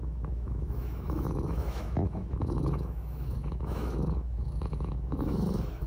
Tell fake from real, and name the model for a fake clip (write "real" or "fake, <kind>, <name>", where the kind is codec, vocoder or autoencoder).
fake, autoencoder, DAC-VAE